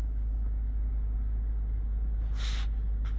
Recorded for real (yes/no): yes